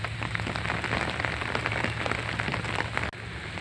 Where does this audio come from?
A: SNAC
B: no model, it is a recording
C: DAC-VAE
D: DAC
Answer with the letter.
B